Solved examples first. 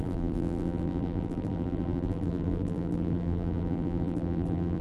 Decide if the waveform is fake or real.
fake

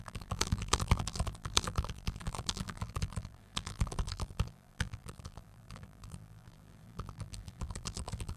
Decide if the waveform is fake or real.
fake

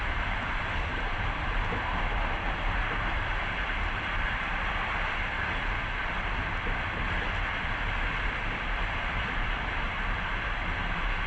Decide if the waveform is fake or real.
fake